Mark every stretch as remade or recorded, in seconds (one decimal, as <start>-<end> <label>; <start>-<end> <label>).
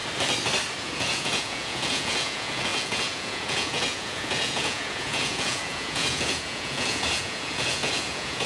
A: 0.0-0.8 recorded; 0.8-8.5 remade